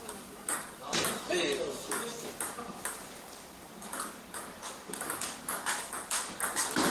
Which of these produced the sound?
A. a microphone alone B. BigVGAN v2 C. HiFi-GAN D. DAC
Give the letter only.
D